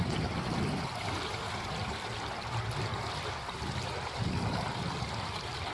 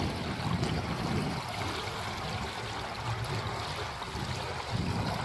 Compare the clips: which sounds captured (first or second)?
second